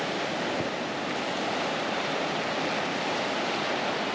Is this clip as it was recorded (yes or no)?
yes